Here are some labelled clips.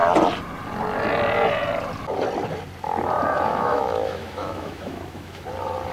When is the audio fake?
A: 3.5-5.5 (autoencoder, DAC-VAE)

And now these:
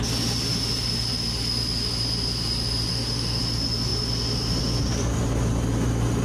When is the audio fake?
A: 2.9-3.4 (autoencoder, DAC-VAE)

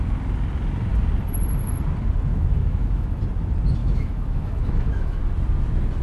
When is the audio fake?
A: 2.3-3.2 (autoencoder, DAC-VAE); 3.8-5.2

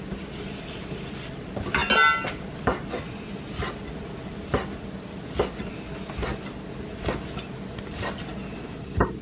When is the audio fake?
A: none